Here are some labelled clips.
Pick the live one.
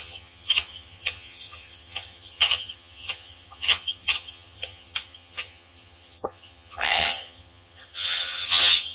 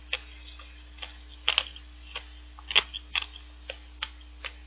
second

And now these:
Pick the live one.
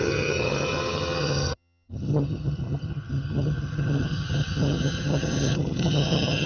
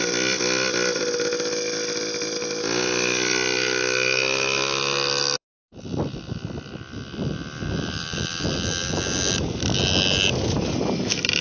second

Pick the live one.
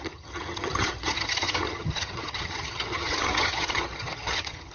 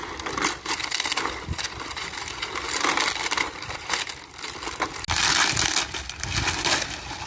second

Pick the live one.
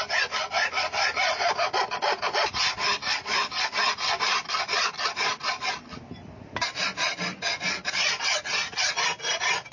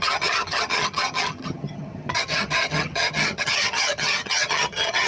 first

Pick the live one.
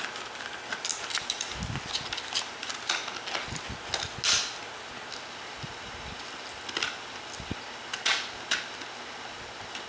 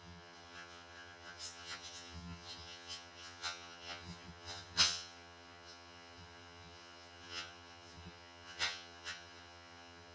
first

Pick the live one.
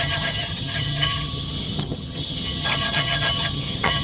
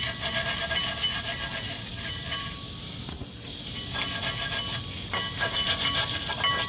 second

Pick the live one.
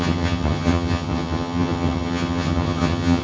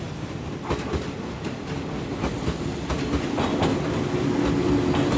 second